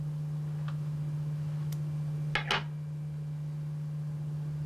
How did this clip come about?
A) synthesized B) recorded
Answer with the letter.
B